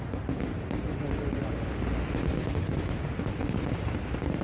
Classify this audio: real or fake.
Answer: real